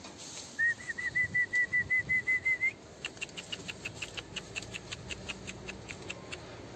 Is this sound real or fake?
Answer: real